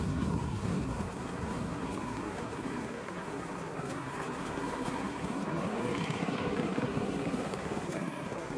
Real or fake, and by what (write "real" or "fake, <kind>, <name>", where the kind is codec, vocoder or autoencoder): fake, codec, SNAC